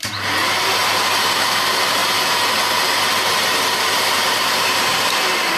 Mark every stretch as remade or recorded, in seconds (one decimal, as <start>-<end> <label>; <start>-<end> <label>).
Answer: 0.0-2.0 remade; 2.0-3.3 recorded; 3.3-5.6 remade

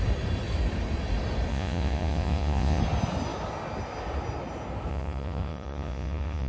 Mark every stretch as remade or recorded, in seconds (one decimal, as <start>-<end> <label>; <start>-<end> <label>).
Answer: 0.0-1.5 recorded; 1.5-2.8 remade; 2.8-4.9 recorded; 4.9-6.5 remade

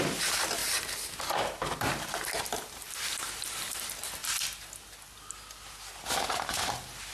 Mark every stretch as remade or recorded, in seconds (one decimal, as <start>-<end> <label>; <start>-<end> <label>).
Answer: 0.0-0.6 recorded; 0.6-3.8 remade; 3.8-7.1 recorded

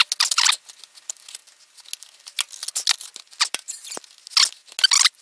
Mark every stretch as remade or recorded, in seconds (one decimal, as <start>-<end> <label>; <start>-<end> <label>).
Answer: 0.0-5.2 recorded

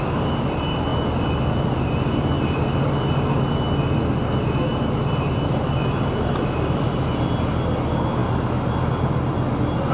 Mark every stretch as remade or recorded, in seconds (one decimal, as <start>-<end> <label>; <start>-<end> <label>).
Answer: 0.0-9.9 recorded

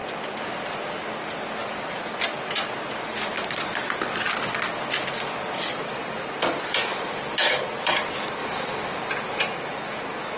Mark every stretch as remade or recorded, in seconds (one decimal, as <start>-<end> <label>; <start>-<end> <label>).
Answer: 0.0-0.6 remade; 0.6-1.6 recorded; 1.6-4.8 remade; 4.8-6.9 recorded; 6.9-7.6 remade; 7.6-8.4 recorded; 8.4-9.4 remade; 9.4-10.4 recorded

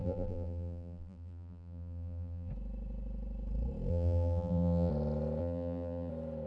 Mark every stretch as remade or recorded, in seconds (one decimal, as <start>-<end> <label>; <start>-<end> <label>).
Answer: 0.0-2.5 remade; 2.5-3.9 recorded; 3.9-4.9 remade; 4.9-5.4 recorded; 5.4-6.1 remade; 6.1-6.5 recorded